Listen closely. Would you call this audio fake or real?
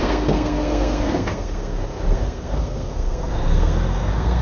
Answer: fake